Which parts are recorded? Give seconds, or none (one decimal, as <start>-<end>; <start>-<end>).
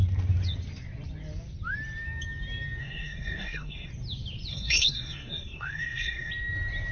0.0-2.8; 3.9-4.5; 6.3-6.9